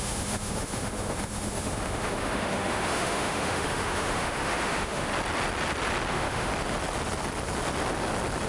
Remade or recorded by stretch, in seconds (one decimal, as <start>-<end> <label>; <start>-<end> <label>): 0.0-5.1 remade; 5.1-6.1 recorded; 6.1-6.5 remade; 6.5-8.5 recorded